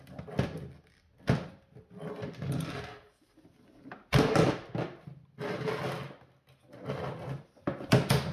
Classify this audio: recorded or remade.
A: recorded